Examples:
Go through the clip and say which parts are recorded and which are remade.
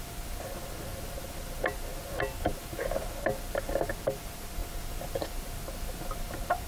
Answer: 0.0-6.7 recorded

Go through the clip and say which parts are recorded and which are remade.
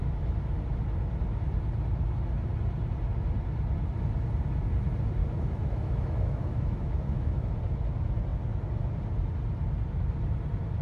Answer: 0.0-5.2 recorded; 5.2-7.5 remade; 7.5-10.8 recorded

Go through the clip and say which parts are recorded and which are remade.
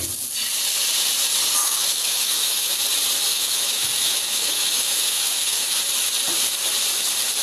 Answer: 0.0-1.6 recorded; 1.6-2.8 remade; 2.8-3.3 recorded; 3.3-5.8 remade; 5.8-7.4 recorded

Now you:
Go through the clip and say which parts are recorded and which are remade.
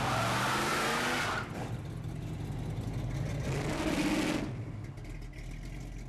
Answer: 0.0-6.1 recorded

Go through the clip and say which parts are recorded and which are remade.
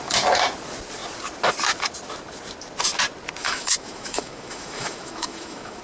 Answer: 0.0-3.4 recorded; 3.4-5.8 remade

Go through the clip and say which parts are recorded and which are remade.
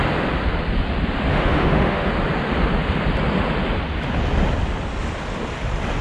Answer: 0.0-1.3 recorded; 1.3-2.1 remade; 2.1-6.0 recorded